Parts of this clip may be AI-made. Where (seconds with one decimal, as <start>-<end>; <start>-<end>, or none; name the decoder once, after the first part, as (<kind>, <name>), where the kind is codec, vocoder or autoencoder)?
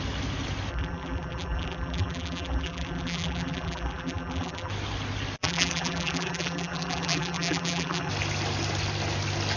0.7-4.7 (vocoder, BigVGAN v2); 5.4-8.1